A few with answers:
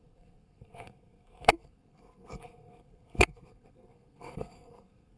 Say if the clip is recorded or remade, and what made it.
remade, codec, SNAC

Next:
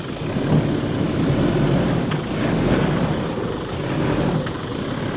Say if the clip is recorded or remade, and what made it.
recorded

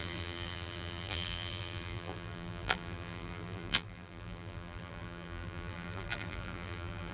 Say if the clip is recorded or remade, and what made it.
remade, vocoder, BigVGAN v2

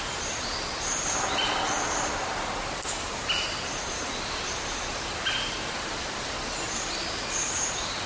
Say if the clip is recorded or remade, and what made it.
recorded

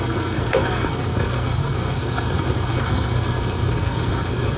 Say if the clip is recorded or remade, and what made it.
remade, codec, SNAC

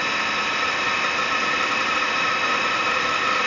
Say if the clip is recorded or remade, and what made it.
recorded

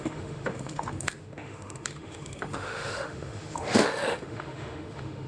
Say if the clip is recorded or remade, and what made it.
remade, autoencoder, DAC-VAE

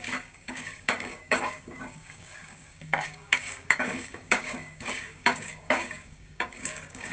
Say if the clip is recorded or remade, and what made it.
remade, codec, DAC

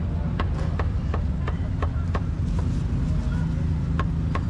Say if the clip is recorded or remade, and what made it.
recorded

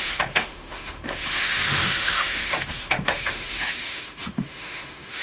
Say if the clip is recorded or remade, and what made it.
remade, autoencoder, DAC-VAE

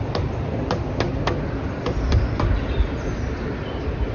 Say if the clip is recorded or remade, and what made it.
recorded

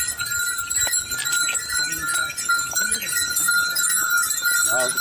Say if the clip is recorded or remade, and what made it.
recorded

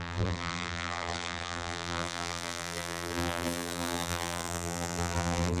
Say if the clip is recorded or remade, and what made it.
remade, vocoder, BigVGAN v2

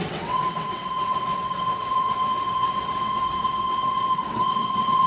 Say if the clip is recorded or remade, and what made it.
remade, vocoder, WaveNeXt